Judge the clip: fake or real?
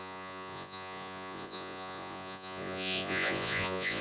fake